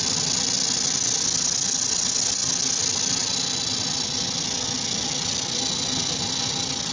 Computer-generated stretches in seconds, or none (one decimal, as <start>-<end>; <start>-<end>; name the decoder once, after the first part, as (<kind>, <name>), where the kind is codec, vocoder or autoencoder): none